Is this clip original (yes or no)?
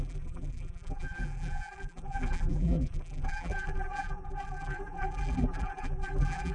no